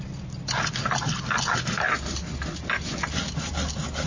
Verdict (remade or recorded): recorded